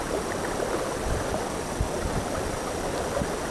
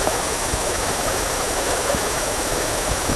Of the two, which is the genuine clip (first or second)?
first